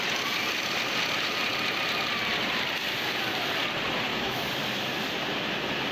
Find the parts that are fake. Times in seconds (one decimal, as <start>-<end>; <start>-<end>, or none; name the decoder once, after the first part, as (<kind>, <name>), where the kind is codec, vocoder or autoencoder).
4.1-4.6 (autoencoder, DAC-VAE)